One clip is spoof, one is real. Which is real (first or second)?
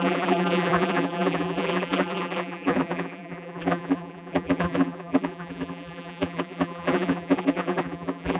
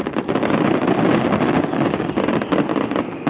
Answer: second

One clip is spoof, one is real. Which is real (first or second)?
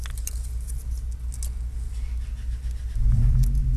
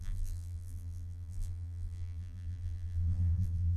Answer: first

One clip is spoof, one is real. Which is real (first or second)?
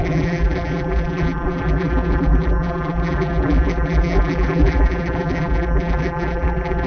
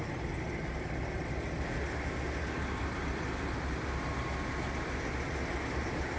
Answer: second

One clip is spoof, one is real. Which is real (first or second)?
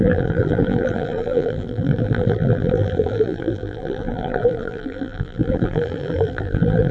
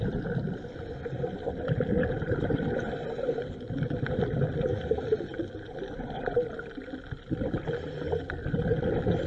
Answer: second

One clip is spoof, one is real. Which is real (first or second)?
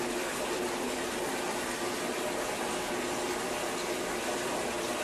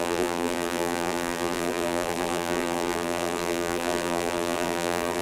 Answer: first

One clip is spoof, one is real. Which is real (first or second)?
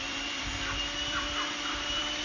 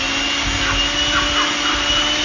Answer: second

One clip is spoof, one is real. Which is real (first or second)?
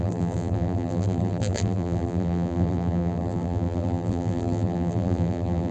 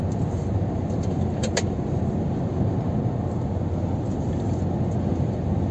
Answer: second